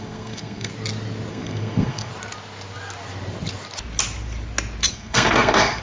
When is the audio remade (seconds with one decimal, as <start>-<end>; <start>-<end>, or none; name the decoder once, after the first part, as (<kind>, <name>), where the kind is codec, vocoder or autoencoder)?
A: 0.0-0.7 (codec, SNAC); 1.3-2.1; 4.9-5.8